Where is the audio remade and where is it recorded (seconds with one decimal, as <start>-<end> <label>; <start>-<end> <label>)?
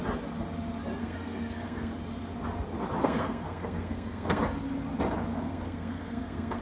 0.0-1.0 recorded; 1.0-1.9 remade; 1.9-3.0 recorded; 3.0-4.4 remade; 4.4-5.3 recorded; 5.3-6.6 remade